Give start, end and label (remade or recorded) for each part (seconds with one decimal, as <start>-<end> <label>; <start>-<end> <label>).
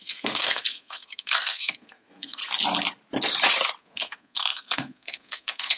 0.0-2.4 remade; 2.4-3.8 recorded; 3.8-5.8 remade